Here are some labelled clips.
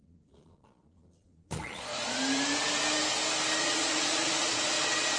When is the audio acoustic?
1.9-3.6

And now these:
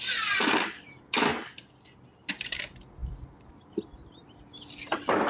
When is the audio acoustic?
0.0-5.3

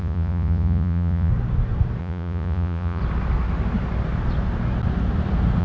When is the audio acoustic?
1.3-2.0; 3.0-5.6

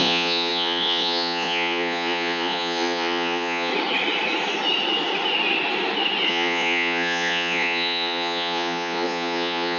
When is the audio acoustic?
3.7-6.3

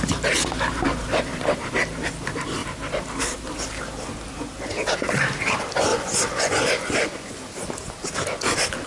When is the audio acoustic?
0.0-5.9; 7.4-8.9

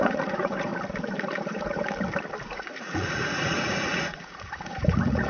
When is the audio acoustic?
0.7-1.4; 1.8-2.4

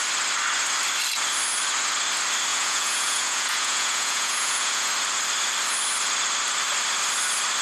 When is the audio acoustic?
0.0-2.5; 4.9-7.6